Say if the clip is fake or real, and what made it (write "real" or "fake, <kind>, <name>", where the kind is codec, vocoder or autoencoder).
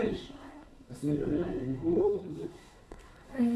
fake, codec, SNAC